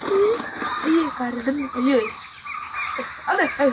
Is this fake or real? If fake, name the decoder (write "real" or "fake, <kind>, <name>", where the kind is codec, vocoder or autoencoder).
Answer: real